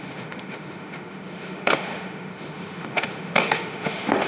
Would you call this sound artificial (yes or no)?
yes